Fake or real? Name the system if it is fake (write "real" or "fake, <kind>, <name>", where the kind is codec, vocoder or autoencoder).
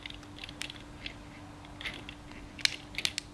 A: real